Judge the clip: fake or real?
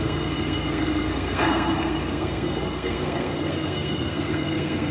fake